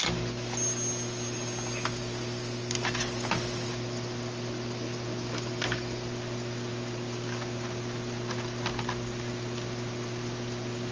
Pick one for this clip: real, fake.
real